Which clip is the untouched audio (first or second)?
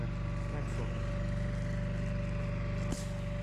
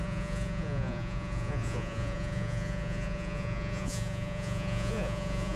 first